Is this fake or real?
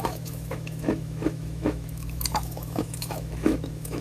fake